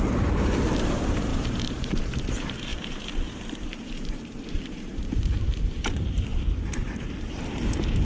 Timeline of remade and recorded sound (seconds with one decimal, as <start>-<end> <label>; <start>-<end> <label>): 0.0-8.0 remade